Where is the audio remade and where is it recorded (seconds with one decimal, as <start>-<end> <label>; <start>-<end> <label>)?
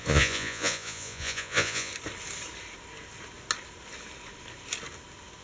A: 0.0-1.9 remade; 1.9-5.4 recorded